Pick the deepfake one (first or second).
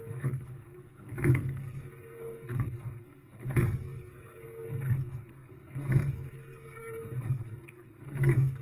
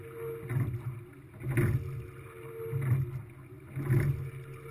first